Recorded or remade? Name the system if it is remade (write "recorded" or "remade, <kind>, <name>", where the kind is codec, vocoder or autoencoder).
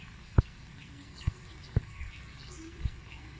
remade, codec, SNAC